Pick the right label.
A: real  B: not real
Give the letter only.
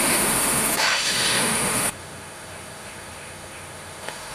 B